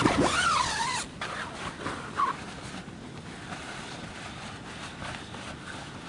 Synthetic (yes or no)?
no